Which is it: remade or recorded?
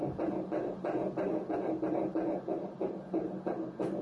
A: recorded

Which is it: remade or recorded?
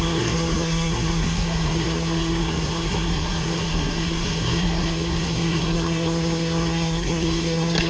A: remade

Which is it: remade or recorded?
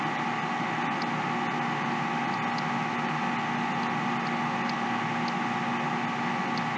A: recorded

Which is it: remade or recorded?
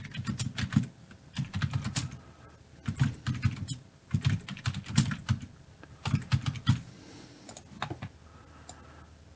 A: recorded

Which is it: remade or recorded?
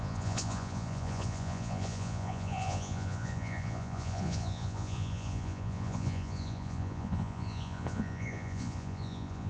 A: remade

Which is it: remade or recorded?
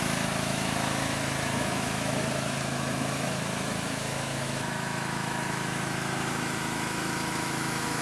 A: remade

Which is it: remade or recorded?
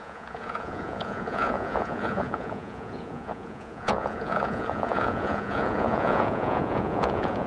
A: remade